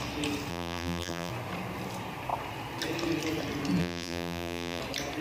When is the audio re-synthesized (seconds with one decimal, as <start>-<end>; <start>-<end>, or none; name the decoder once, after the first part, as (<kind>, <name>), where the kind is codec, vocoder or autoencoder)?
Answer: 0.5-1.3 (vocoder, BigVGAN v2); 3.8-4.8